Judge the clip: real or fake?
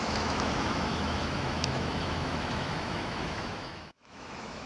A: fake